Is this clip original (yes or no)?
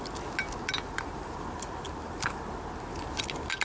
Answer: yes